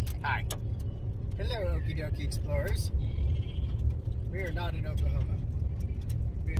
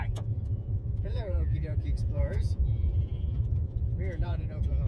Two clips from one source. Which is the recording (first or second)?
first